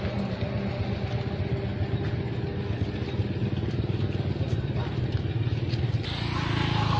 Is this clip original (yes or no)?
yes